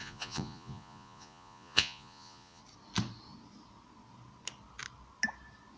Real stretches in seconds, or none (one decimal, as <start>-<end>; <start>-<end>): 2.6-5.8